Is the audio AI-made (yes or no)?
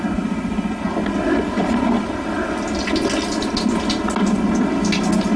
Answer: no